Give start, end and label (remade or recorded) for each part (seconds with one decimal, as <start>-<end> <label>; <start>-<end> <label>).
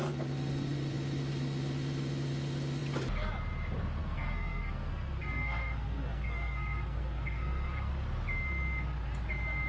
0.0-4.0 recorded; 4.0-7.9 remade; 7.9-9.7 recorded